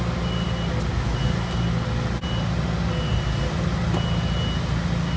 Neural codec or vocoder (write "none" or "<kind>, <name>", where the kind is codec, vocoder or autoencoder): none